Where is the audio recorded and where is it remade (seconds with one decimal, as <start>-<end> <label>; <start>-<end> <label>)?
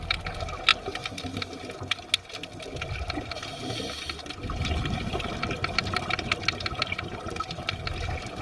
0.0-8.4 recorded